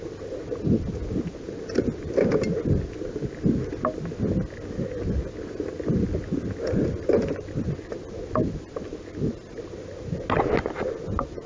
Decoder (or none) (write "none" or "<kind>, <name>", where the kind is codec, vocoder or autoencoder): none